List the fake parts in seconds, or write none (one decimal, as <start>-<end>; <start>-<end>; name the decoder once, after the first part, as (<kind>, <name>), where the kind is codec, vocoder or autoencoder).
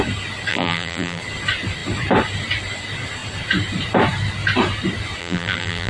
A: 0.5-1.2 (vocoder, BigVGAN v2); 5.2-5.9